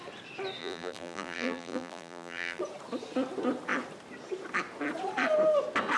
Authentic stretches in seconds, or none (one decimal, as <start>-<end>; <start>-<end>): 0.0-0.6; 2.6-6.0